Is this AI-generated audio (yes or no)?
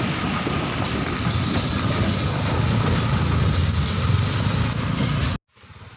no